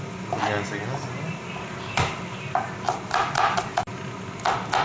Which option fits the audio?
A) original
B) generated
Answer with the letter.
A